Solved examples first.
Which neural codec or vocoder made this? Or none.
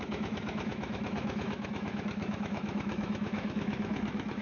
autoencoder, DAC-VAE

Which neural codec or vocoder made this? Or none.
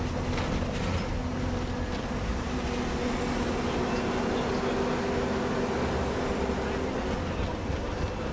none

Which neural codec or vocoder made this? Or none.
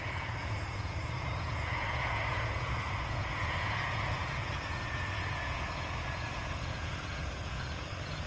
vocoder, Vocos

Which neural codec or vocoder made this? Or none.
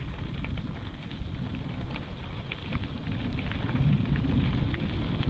none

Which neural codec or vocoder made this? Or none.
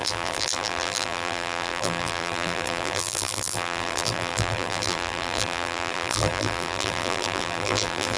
vocoder, BigVGAN v2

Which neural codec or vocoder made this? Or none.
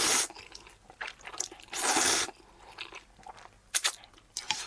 none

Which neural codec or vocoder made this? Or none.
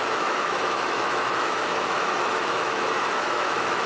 autoencoder, DAC-VAE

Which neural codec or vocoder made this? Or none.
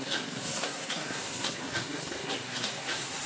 codec, SNAC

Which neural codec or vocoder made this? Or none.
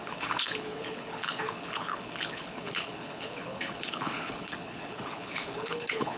codec, HILCodec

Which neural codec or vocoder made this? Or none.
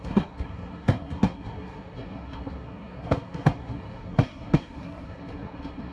codec, SNAC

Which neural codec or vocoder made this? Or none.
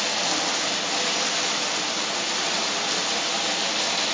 none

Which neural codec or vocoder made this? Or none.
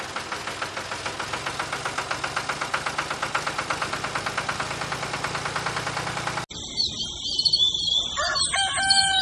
none